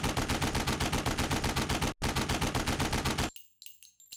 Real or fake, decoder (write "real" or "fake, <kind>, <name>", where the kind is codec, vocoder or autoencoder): real